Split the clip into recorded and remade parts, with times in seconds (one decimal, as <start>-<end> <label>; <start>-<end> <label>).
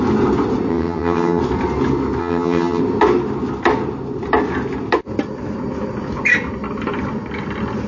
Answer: 0.0-0.7 recorded; 0.7-1.4 remade; 1.4-2.2 recorded; 2.2-2.8 remade; 2.8-7.9 recorded